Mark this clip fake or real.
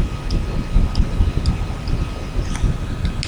real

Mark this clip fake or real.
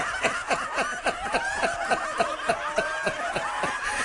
real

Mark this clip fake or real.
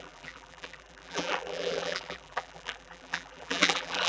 fake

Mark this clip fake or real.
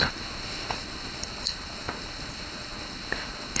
fake